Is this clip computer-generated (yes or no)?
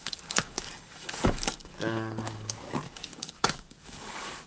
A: yes